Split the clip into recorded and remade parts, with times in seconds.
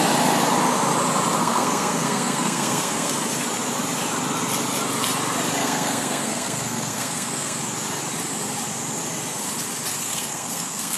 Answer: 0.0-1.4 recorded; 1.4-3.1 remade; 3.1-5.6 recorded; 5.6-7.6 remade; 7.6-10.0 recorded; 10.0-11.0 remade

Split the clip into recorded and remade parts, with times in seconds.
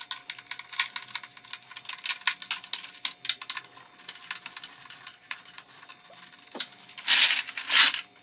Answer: 0.0-5.1 recorded; 5.1-5.9 remade; 5.9-8.2 recorded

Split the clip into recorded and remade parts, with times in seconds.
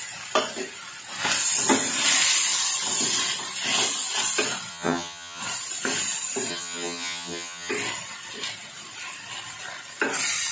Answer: 0.0-4.7 recorded; 4.7-5.4 remade; 5.4-6.5 recorded; 6.5-7.7 remade; 7.7-10.5 recorded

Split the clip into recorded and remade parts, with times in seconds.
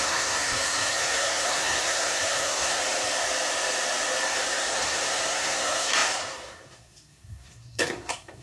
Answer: 0.0-2.8 remade; 2.8-4.3 recorded; 4.3-8.4 remade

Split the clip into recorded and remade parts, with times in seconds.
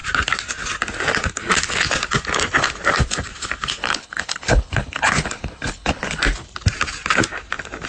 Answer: 0.0-3.8 recorded; 3.8-6.2 remade; 6.2-7.9 recorded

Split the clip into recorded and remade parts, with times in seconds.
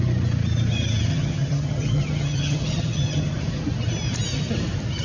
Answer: 0.0-1.1 recorded; 1.1-3.2 remade; 3.2-5.0 recorded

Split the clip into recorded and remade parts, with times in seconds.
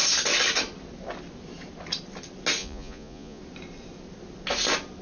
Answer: 0.0-2.6 recorded; 2.6-3.4 remade; 3.4-5.0 recorded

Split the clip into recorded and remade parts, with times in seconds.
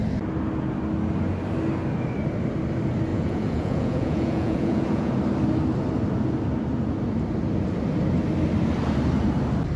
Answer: 0.0-3.1 recorded; 3.1-5.1 remade; 5.1-9.8 recorded